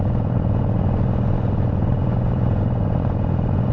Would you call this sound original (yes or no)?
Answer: no